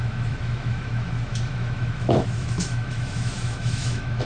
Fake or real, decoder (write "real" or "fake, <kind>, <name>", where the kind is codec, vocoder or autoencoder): fake, autoencoder, DAC-VAE